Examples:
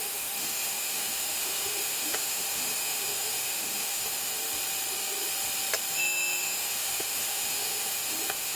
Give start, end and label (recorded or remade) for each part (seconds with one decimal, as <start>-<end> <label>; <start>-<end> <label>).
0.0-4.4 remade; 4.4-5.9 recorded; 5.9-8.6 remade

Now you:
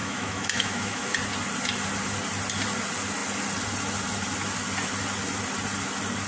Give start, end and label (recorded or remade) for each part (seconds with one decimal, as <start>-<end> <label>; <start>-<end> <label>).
0.0-1.2 remade; 1.2-6.3 recorded

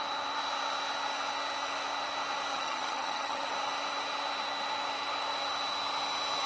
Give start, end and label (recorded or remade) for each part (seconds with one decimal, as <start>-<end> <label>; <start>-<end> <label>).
0.0-2.5 recorded; 2.5-3.5 remade; 3.5-6.5 recorded

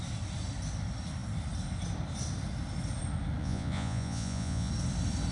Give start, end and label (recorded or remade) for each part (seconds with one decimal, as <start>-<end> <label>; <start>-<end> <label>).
0.0-3.4 recorded; 3.4-4.7 remade; 4.7-5.3 recorded

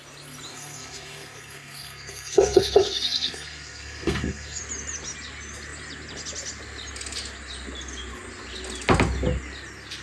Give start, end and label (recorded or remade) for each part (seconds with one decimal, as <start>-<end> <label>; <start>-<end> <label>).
0.0-0.5 recorded; 0.5-4.6 remade; 4.6-10.0 recorded